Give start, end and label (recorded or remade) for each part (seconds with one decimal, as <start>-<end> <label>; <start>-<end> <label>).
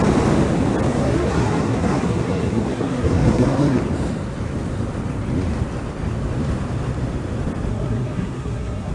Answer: 0.0-0.9 recorded; 0.9-3.8 remade; 3.8-7.7 recorded; 7.7-8.9 remade